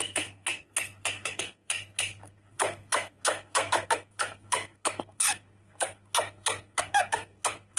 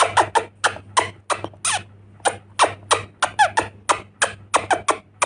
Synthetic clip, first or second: first